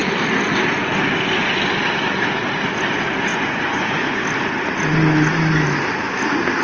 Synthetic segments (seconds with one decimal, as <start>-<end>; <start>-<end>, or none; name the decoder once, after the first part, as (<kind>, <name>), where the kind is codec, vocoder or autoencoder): 3.3-4.2 (vocoder, Vocos)

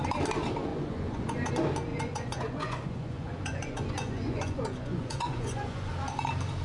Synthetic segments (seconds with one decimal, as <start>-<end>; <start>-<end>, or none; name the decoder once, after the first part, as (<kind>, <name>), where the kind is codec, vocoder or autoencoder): 0.7-1.5 (vocoder, Vocos); 1.9-5.9

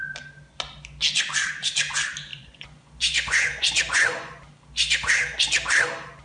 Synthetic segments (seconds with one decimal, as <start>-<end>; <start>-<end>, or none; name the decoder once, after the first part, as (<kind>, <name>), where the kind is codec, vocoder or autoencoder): 2.3-4.5 (vocoder, Vocos)

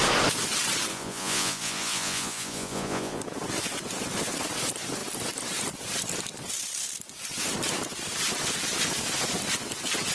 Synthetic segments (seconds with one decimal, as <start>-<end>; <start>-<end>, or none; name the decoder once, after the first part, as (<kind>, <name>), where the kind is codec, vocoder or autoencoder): 0.9-3.2 (vocoder, Vocos)

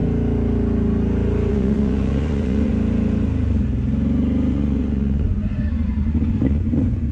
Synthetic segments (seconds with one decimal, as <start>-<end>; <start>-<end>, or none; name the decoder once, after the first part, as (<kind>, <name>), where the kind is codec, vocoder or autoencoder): 1.5-2.7 (vocoder, Vocos); 4.5-7.1

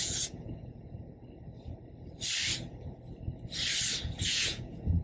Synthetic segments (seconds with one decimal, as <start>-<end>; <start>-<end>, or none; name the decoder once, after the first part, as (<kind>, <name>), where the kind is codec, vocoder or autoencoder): 0.0-1.0 (vocoder, Vocos); 4.0-5.0

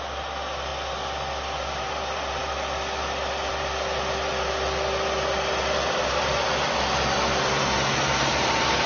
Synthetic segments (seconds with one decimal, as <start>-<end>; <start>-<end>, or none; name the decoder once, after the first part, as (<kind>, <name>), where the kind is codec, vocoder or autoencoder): none